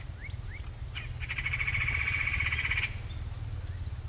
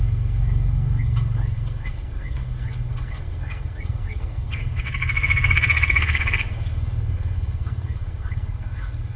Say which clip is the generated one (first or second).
second